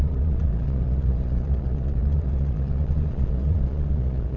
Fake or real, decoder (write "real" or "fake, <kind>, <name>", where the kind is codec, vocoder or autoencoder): fake, vocoder, Vocos